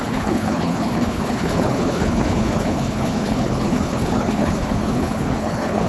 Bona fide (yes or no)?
no